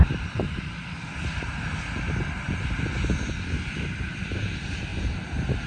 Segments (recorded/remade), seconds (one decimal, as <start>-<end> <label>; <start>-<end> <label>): 0.0-1.1 remade; 1.1-3.5 recorded; 3.5-4.9 remade; 4.9-5.7 recorded